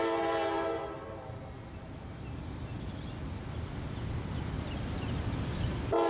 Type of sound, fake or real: real